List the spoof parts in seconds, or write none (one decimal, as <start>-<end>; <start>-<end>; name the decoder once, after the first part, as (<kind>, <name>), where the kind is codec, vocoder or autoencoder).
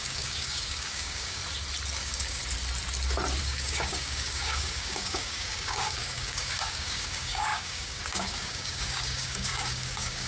0.0-1.4 (codec, DAC); 2.0-2.4; 3.4-10.3